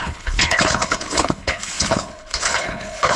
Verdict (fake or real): fake